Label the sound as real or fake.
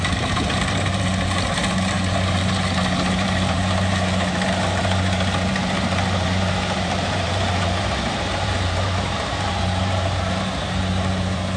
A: fake